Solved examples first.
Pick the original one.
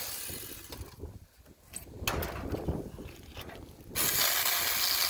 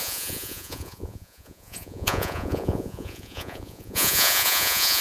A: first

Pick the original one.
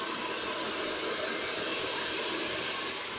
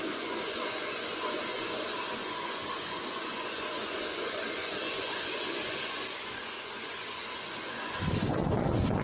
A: first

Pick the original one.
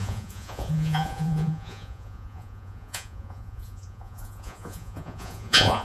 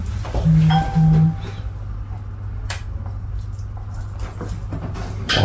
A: second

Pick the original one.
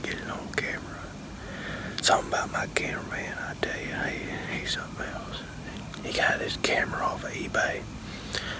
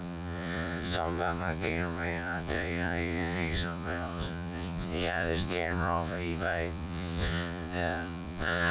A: first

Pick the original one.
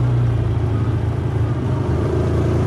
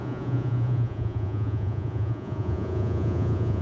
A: first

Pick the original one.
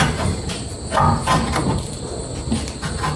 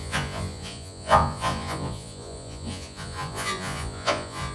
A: first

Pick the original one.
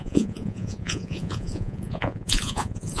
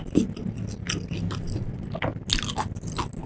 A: second